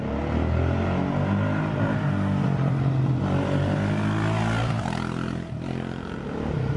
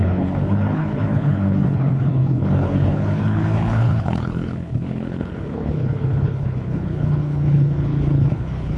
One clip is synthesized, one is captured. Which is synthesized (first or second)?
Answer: second